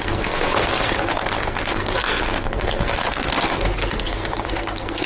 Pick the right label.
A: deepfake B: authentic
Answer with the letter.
A